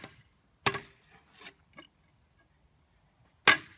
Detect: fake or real real